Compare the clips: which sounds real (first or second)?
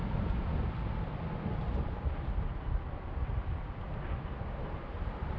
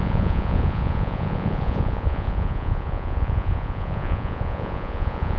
first